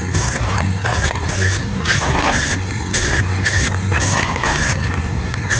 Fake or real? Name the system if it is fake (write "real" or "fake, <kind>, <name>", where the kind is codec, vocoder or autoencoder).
fake, codec, SNAC